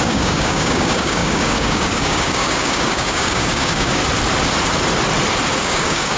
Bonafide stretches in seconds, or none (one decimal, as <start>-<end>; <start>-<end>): 4.0-5.6